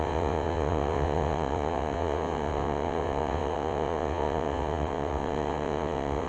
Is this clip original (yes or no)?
no